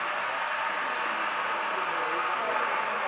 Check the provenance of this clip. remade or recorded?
recorded